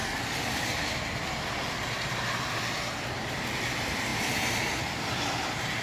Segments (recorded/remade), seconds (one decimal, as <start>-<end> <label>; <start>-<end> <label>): 0.0-5.8 recorded